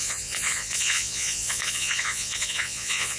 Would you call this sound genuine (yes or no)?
no